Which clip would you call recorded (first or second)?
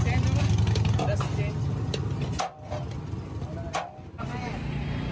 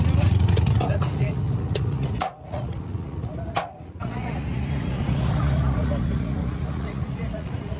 first